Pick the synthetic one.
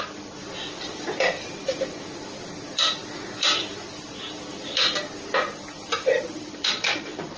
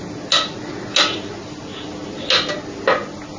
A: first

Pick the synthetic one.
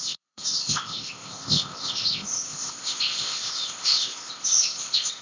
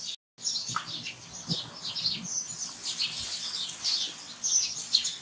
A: first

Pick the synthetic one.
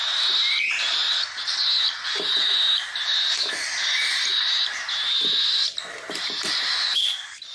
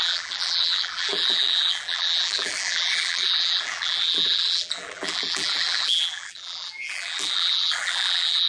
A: second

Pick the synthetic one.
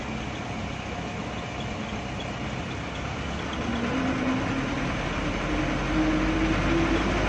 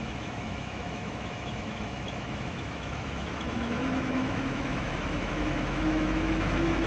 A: second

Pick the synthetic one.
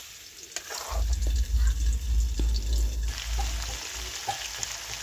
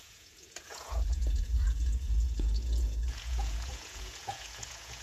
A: second